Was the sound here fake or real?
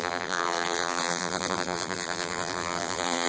fake